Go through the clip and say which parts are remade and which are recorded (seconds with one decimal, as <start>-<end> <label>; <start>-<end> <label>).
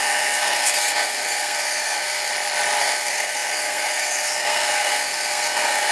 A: 0.0-2.3 remade; 2.3-2.8 recorded; 2.8-5.9 remade